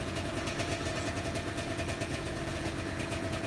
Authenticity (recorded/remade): remade